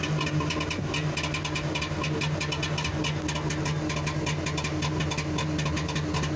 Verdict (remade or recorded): recorded